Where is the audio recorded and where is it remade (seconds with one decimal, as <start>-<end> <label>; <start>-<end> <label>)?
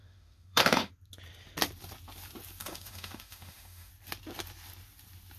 0.0-0.9 remade; 0.9-2.6 recorded; 2.6-3.9 remade; 3.9-5.4 recorded